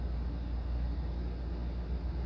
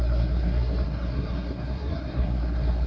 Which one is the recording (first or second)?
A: first